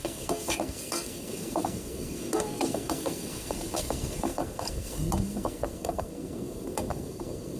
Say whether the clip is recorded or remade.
remade